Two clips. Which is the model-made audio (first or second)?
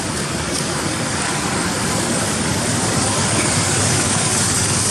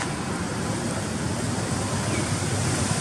first